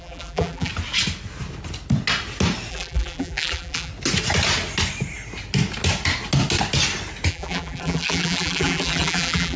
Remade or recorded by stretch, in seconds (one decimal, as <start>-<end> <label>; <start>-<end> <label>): 0.0-0.7 remade; 0.7-2.7 recorded; 2.7-3.9 remade; 3.9-7.3 recorded; 7.3-9.6 remade